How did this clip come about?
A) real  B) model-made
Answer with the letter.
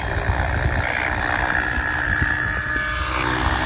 A